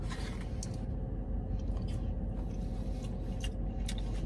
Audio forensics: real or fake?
real